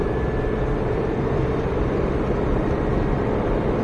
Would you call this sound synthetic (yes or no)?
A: yes